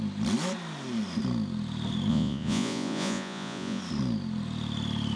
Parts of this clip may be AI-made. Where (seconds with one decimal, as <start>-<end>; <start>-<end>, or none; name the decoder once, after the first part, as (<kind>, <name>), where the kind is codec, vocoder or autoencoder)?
2.1-3.8 (vocoder, Vocos)